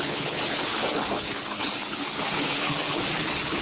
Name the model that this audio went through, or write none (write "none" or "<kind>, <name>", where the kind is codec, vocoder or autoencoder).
codec, HILCodec